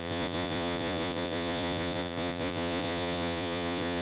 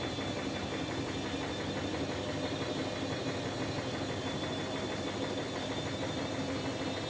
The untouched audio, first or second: second